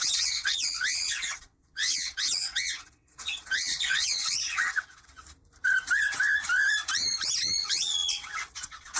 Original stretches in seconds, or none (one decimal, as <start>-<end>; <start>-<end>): 5.1-7.6